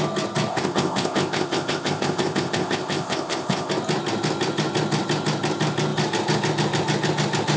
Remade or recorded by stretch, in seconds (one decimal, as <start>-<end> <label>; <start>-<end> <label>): 0.0-0.5 recorded; 0.5-3.7 remade; 3.7-7.6 recorded